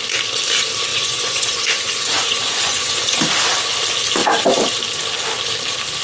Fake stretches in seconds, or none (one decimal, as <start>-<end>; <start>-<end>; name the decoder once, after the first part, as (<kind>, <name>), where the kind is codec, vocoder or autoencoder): 0.9-3.2 (vocoder, Vocos)